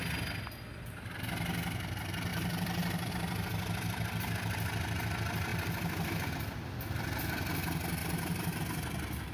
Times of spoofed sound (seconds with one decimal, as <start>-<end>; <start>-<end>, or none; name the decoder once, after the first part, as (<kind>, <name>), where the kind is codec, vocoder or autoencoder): 2.3-3.1 (vocoder, BigVGAN v2); 5.5-6.3; 8.0-8.6